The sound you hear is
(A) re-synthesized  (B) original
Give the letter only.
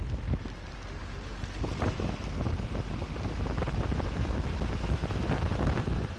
B